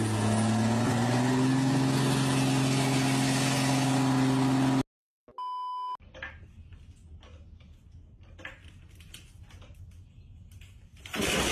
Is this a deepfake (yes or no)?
no